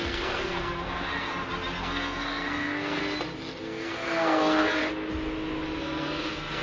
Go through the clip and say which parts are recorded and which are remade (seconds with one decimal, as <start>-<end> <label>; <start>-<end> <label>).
0.0-1.3 remade; 1.3-1.8 recorded; 1.8-3.0 remade; 3.0-3.6 recorded; 3.6-4.8 remade; 4.8-5.8 recorded; 5.8-6.6 remade